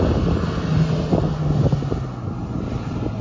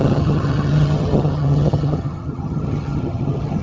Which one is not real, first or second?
second